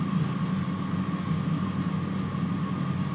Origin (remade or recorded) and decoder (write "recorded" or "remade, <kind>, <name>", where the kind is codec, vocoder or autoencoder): recorded